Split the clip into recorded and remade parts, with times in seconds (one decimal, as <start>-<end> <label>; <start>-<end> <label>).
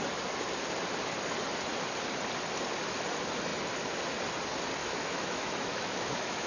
0.0-4.8 recorded; 4.8-6.5 remade